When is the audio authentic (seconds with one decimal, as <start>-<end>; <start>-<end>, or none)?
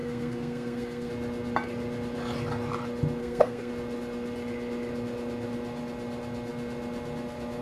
1.1-3.2; 3.7-7.6